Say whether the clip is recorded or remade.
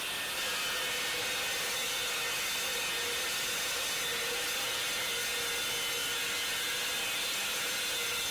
recorded